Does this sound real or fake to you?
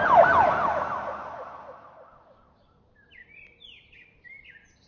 real